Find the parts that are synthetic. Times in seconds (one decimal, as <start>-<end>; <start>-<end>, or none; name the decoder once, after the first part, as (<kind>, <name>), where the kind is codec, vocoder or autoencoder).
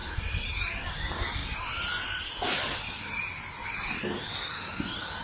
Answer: none